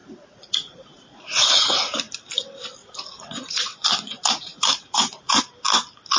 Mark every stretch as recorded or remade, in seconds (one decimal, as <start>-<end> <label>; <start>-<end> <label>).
0.0-1.7 remade; 1.7-2.8 recorded; 2.8-5.4 remade; 5.4-6.2 recorded